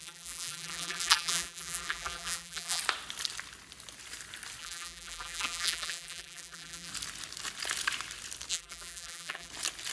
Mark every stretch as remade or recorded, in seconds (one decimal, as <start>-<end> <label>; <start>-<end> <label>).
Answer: 0.0-2.8 remade; 2.8-4.6 recorded; 4.6-6.9 remade; 6.9-8.5 recorded; 8.5-9.5 remade; 9.5-9.9 recorded